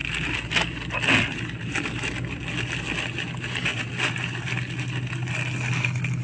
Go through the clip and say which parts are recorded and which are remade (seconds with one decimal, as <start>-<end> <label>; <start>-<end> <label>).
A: 0.0-6.2 recorded